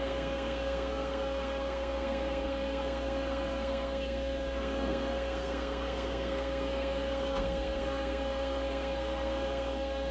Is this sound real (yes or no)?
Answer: no